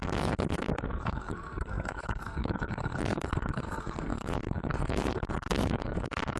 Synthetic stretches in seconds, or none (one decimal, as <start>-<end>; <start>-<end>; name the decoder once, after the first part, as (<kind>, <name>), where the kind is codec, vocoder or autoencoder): 0.0-6.4 (codec, SNAC)